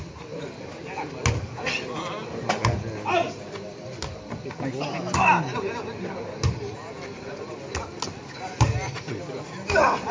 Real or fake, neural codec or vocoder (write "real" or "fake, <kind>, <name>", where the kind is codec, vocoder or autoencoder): real